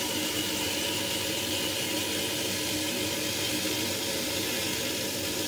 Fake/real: real